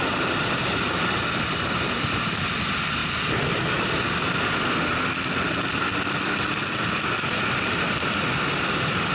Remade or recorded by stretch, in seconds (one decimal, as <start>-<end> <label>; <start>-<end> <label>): 0.0-9.1 recorded

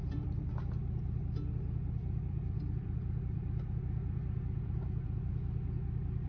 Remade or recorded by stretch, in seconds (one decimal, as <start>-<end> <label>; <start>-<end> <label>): 0.0-0.5 remade; 0.5-2.0 recorded; 2.0-5.3 remade; 5.3-6.3 recorded